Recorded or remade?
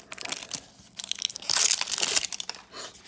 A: recorded